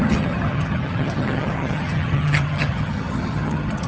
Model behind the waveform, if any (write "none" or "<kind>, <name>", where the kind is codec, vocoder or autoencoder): vocoder, HiFi-GAN